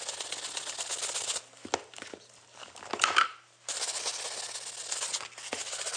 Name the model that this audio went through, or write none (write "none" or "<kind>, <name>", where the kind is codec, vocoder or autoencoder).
none